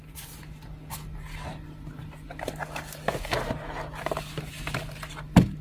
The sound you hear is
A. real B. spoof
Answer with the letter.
A